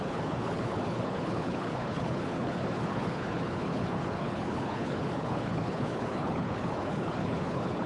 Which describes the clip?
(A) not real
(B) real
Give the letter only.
A